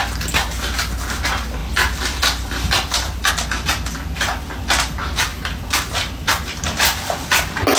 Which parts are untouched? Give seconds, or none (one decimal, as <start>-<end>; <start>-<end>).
0.0-1.6; 3.3-5.3; 6.3-7.8